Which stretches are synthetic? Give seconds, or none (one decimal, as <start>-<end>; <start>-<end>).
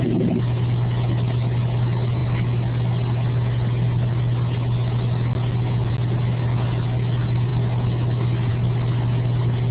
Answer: none